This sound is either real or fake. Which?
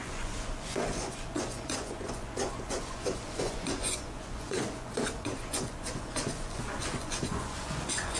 fake